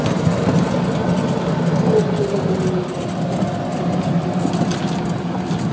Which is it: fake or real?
real